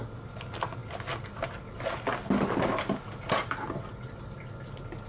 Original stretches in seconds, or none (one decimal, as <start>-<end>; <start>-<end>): 0.0-5.1